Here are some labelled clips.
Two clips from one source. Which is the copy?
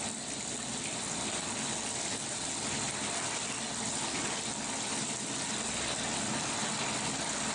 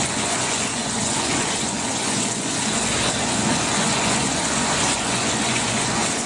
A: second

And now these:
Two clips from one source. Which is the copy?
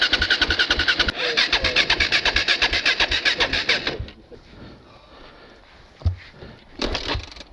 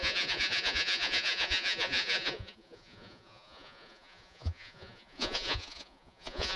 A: second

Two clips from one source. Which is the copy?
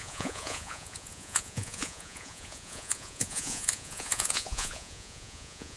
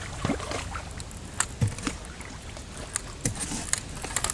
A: first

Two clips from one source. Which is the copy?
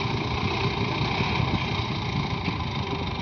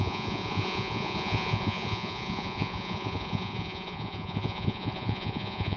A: second